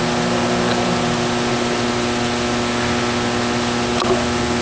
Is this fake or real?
real